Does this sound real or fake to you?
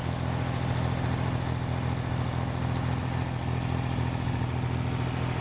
real